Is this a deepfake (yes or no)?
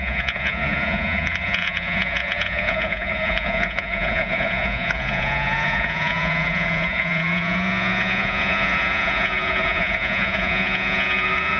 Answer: yes